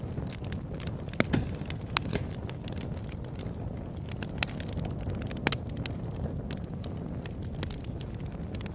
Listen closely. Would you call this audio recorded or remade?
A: recorded